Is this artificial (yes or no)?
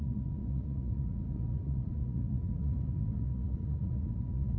yes